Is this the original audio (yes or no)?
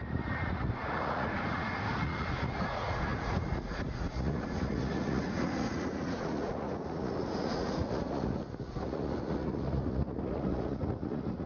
no